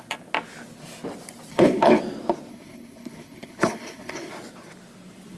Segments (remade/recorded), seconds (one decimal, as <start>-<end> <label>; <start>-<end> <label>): 0.0-1.5 recorded; 1.5-2.0 remade; 2.0-2.5 recorded; 2.5-4.3 remade; 4.3-5.4 recorded